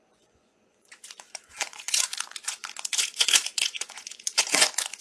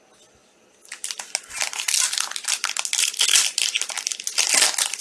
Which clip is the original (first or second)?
second